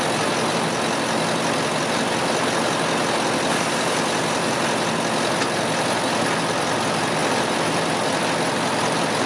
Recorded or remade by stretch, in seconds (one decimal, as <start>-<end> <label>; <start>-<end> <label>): 0.0-9.3 recorded